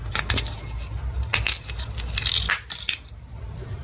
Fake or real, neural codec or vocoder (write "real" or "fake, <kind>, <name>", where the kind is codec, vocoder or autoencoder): real